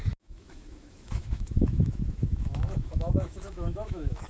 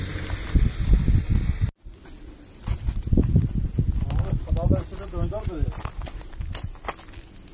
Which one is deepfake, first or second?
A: first